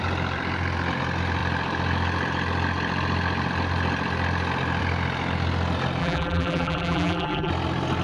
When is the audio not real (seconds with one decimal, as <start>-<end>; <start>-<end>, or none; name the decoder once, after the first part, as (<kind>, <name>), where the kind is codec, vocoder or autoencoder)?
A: 6.0-7.5 (vocoder, BigVGAN v2)